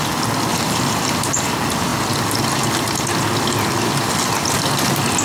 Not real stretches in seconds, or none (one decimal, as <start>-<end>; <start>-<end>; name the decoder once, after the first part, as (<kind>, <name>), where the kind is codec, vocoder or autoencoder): 0.5-1.5 (vocoder, BigVGAN v2)